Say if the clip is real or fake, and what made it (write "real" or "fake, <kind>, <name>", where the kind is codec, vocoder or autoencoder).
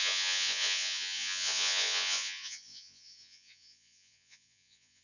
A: fake, vocoder, Vocos